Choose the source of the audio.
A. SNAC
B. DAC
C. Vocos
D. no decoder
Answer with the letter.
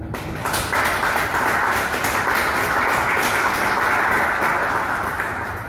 D